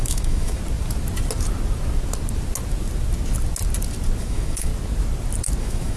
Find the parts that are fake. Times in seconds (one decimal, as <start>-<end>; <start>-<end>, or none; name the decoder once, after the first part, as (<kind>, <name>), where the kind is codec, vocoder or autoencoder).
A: 0.0-0.6 (autoencoder, DAC-VAE); 4.2-4.7; 5.6-6.0